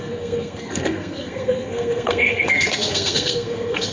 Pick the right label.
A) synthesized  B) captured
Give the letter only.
A